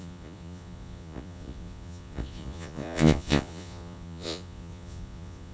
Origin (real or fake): fake